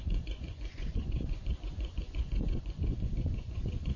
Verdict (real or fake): fake